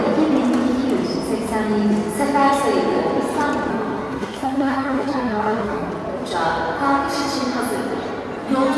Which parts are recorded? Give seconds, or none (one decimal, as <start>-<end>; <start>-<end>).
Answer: 0.0-3.7; 5.9-8.8